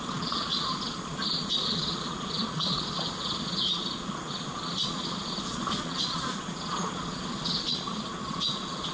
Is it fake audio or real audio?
fake